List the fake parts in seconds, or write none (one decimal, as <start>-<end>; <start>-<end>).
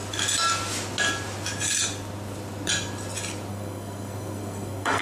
3.5-5.0